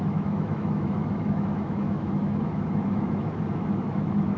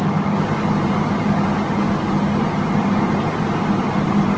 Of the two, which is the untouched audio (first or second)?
second